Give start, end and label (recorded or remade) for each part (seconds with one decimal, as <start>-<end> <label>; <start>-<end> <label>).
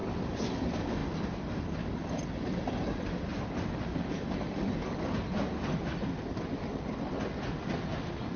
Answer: 0.0-8.4 recorded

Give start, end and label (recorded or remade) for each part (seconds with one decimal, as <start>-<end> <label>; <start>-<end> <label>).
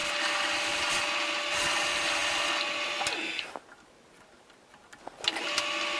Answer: 0.0-6.0 recorded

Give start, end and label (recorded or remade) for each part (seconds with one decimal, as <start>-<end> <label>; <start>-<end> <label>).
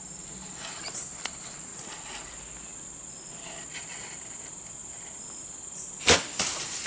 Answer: 0.0-1.7 recorded; 1.7-2.3 remade; 2.3-6.9 recorded